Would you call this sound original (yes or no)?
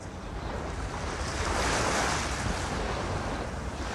yes